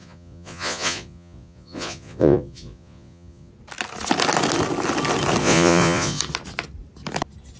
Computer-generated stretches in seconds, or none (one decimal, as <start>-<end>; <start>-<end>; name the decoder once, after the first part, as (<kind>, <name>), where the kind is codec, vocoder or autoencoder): 0.0-3.5 (vocoder, Vocos); 5.4-6.2